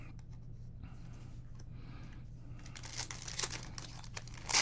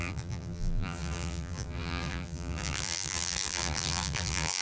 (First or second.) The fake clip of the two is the second